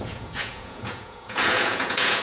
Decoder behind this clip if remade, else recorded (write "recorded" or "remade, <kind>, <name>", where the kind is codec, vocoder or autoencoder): remade, vocoder, Vocos